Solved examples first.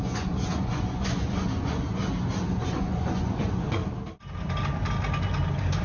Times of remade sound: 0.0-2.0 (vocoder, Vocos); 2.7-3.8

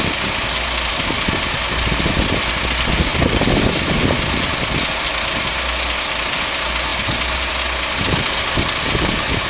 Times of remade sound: 0.9-2.4 (vocoder, BigVGAN v2); 3.1-4.5